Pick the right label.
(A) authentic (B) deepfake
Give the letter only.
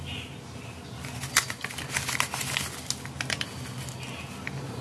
A